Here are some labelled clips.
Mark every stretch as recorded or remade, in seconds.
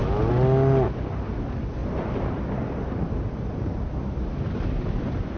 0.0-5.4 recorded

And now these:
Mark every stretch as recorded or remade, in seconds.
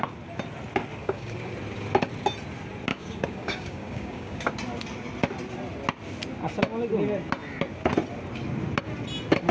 0.0-1.0 recorded; 1.0-1.5 remade; 1.5-2.9 recorded; 2.9-4.5 remade; 4.5-9.5 recorded